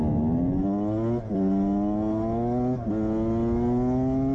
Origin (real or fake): real